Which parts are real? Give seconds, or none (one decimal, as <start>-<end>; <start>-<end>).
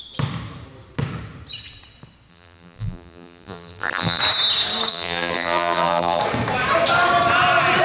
0.0-2.3; 4.2-4.9; 6.2-7.8